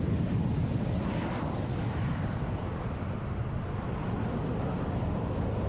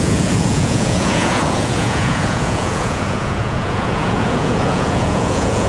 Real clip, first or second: first